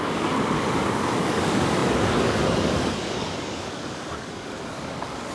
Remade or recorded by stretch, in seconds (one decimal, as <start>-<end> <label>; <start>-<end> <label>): 0.0-5.3 remade